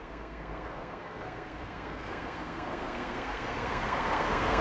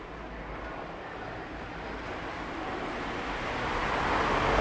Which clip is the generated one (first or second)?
first